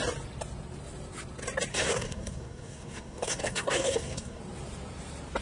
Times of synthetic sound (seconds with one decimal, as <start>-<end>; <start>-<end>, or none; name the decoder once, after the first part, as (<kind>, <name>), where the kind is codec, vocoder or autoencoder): 1.7-4.4 (codec, SNAC)